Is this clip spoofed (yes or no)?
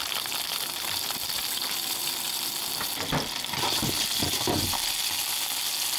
no